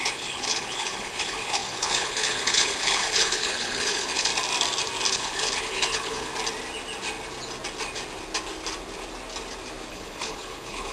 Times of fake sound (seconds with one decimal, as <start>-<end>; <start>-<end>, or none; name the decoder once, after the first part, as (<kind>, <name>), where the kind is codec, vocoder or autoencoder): 0.0-4.3 (codec, HILCodec); 5.1-6.3; 9.9-10.9